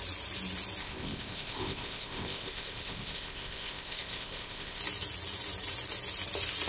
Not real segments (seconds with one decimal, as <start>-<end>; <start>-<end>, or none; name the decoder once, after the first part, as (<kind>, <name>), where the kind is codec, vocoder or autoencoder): 0.8-4.8 (codec, ZipCodec)